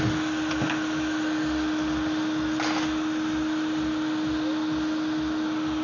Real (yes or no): yes